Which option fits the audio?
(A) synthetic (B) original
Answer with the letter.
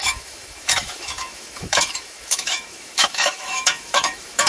A